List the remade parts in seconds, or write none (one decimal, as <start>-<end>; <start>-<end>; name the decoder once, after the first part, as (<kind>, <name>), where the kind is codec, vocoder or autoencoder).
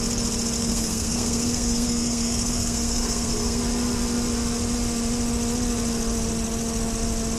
0.6-3.6 (codec, SNAC)